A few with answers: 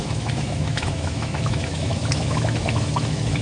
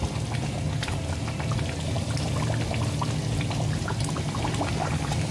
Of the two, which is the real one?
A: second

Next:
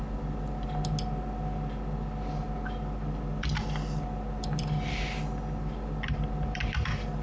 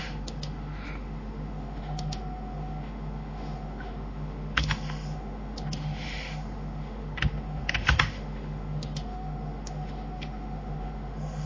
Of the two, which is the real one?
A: first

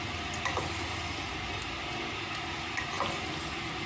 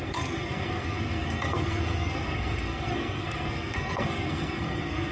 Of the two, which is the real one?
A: first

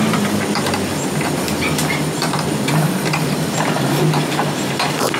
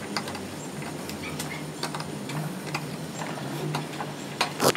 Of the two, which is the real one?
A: second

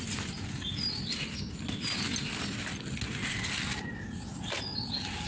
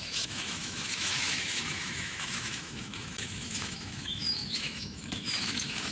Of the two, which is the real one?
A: first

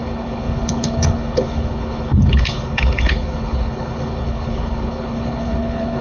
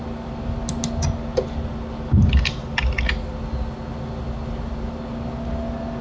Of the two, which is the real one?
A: second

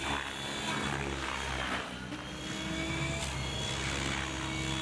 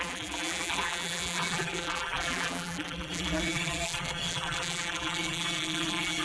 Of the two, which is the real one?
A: first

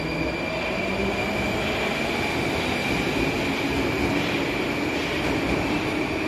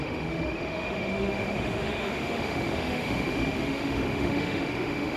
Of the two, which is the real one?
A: first